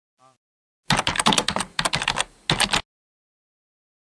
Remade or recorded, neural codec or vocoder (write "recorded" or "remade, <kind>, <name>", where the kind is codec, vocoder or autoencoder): recorded